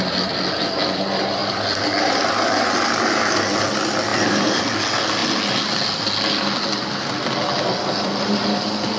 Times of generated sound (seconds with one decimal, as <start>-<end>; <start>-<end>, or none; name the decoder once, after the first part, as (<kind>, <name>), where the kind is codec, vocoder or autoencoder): 4.1-4.6 (vocoder, BigVGAN v2)